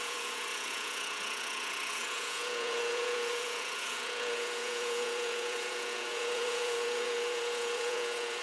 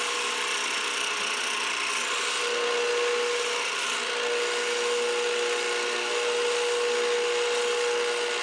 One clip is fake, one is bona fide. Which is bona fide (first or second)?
second